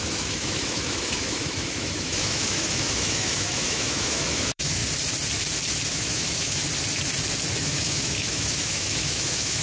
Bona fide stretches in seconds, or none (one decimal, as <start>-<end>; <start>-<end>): 4.8-5.9; 6.6-7.6